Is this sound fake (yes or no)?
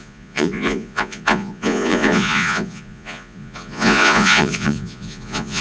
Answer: yes